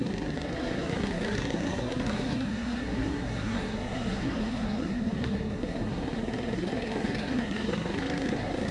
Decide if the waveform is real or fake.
fake